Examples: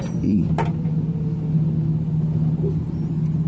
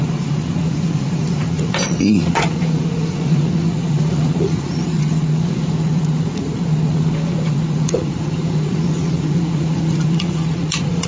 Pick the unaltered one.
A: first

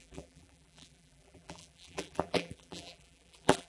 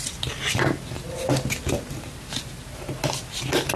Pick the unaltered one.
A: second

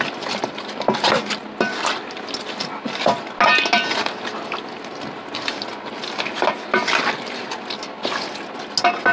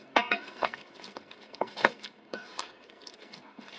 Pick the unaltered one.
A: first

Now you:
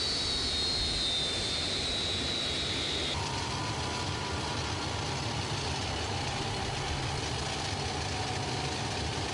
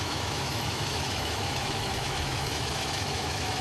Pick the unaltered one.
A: first